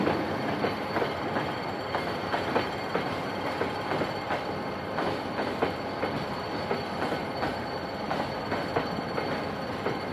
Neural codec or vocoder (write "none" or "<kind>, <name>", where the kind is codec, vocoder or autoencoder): none